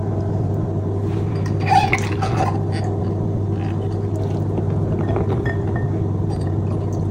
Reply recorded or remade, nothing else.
recorded